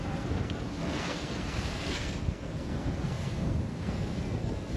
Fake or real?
fake